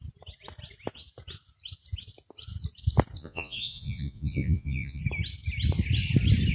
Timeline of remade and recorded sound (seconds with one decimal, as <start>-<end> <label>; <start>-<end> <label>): 0.0-3.2 recorded; 3.2-5.0 remade; 5.0-6.5 recorded